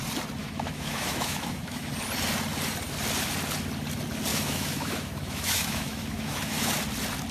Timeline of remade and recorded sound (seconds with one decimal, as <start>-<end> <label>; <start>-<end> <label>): 0.0-0.4 recorded; 0.4-1.9 remade; 1.9-4.3 recorded; 4.3-6.7 remade; 6.7-7.3 recorded